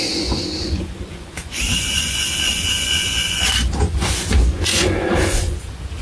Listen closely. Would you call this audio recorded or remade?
remade